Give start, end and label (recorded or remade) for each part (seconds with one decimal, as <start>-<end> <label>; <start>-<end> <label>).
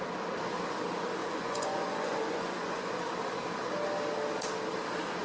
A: 0.0-1.2 recorded; 1.2-2.9 remade; 2.9-5.2 recorded